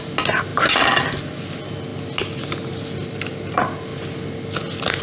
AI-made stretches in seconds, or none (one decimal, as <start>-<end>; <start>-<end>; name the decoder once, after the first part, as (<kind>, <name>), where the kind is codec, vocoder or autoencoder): none